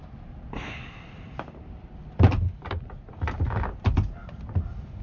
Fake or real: fake